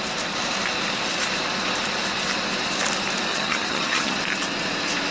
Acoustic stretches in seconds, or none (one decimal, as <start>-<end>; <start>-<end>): 0.0-3.3; 4.2-5.1